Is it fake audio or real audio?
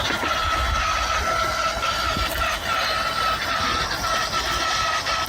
real